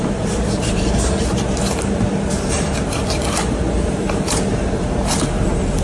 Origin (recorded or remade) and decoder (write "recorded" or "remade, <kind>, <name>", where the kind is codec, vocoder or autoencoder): remade, vocoder, BigVGAN v2